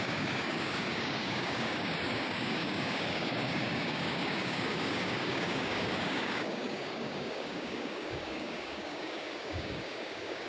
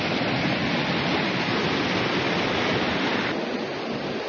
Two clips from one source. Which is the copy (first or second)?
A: first